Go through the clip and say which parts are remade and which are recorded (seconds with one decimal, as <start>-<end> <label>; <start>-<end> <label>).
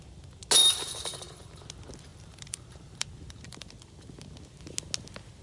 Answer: 0.0-0.6 recorded; 0.6-1.6 remade; 1.6-2.1 recorded; 2.1-3.7 remade; 3.7-5.4 recorded